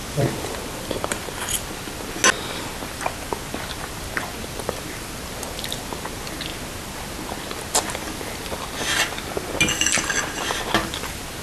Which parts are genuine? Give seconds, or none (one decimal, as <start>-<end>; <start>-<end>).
0.0-11.4